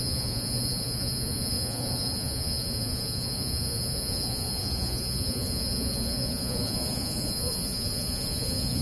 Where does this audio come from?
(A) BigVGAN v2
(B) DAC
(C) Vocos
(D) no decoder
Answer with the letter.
C